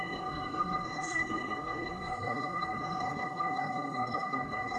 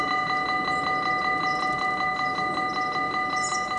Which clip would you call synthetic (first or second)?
first